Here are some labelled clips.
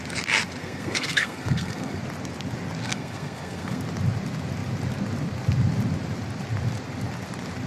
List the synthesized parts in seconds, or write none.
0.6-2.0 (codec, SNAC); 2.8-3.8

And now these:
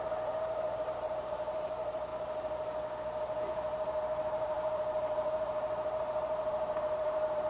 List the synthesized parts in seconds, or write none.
0.0-2.1 (vocoder, BigVGAN v2); 3.4-7.5

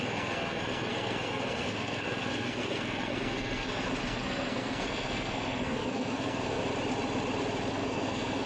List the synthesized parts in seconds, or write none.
0.0-6.6 (codec, SNAC); 7.7-8.5